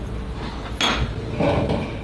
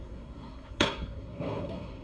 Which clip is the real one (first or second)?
first